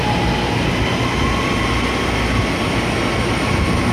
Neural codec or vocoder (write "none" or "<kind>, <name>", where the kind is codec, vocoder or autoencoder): none